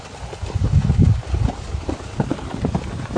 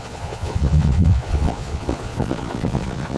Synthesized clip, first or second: second